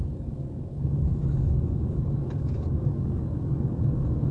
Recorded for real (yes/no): no